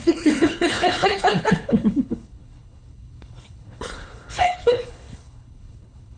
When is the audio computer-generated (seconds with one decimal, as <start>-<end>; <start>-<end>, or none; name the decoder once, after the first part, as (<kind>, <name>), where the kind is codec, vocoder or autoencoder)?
0.0-6.2 (codec, HILCodec)